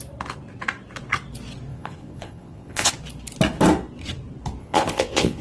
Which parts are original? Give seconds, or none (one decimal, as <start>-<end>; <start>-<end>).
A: 0.0-1.7; 2.9-4.6